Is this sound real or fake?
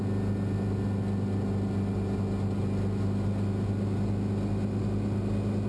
real